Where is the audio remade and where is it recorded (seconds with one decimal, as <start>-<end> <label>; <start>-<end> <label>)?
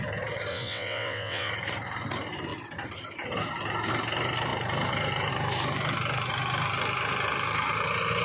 0.0-0.5 recorded; 0.5-1.5 remade; 1.5-8.2 recorded